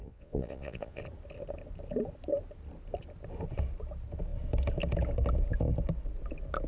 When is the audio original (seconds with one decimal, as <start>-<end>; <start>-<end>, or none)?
1.0-6.7